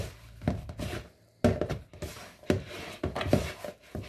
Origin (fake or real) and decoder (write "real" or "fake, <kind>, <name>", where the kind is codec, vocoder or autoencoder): real